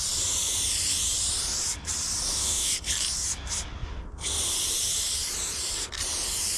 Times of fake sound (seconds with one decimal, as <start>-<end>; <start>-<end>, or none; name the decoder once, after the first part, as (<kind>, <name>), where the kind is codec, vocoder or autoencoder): 2.3-2.8 (autoencoder, DAC-VAE)